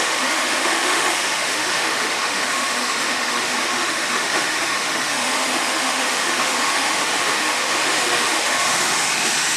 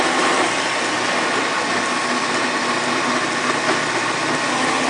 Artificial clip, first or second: first